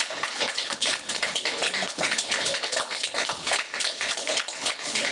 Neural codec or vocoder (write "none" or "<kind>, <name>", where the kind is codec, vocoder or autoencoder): codec, HILCodec